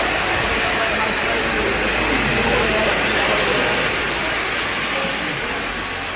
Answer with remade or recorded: recorded